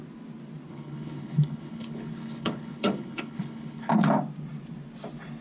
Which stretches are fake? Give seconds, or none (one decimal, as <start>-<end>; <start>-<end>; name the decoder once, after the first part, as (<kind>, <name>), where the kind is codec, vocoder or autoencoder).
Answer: 0.7-3.9 (codec, HILCodec)